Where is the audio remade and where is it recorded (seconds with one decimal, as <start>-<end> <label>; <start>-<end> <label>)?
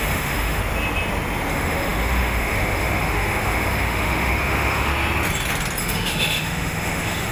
0.0-0.6 remade; 0.6-1.5 recorded; 1.5-4.9 remade; 4.9-5.8 recorded; 5.8-7.3 remade